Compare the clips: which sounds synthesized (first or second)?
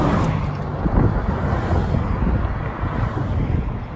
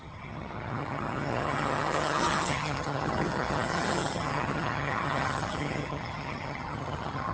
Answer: second